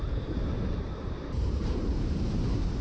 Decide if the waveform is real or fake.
fake